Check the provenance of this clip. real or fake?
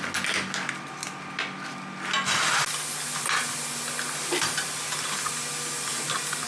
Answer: real